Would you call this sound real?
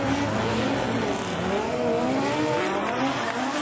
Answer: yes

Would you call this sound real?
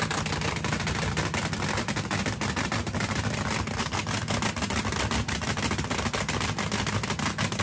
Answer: yes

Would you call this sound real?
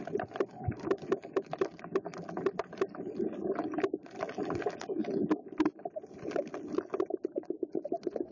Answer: yes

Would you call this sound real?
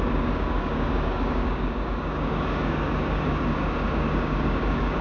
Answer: no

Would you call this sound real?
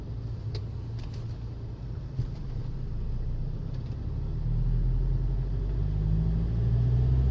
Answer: yes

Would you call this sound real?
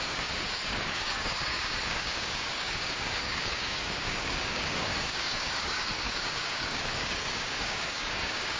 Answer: no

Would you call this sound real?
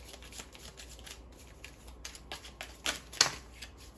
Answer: yes